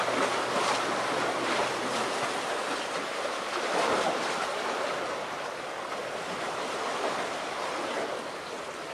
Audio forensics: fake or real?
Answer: real